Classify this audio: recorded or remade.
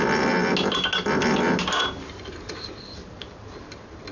recorded